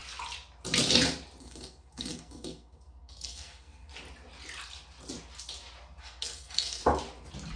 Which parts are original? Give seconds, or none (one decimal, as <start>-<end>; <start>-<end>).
0.0-1.4; 3.9-6.0; 6.8-7.6